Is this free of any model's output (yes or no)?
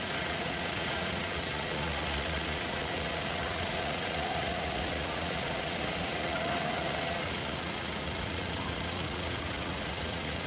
no